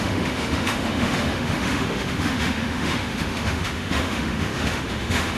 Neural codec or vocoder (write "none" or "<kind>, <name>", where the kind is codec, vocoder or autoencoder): autoencoder, DAC-VAE